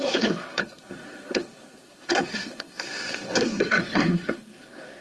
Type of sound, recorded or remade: remade